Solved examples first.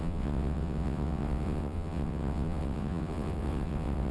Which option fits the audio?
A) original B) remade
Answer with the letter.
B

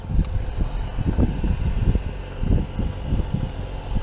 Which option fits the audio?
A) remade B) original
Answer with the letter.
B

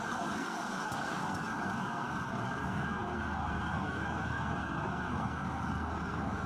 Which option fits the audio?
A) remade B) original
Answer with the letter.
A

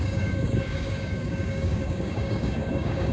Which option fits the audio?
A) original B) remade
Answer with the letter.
B